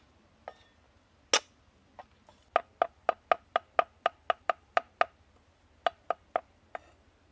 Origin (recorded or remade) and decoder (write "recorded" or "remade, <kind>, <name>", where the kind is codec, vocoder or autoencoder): recorded